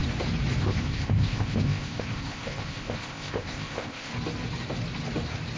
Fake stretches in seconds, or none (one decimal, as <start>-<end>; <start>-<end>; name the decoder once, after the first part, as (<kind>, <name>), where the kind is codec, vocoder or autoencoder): 0.6-4.1 (codec, ZipCodec)